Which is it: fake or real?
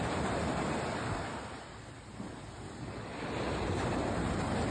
real